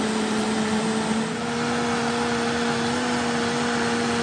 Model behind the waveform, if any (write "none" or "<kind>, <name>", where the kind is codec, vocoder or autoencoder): none